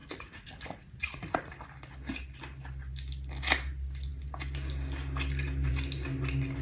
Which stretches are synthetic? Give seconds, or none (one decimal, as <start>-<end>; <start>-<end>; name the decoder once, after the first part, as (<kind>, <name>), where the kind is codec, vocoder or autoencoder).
0.0-1.5 (vocoder, Vocos)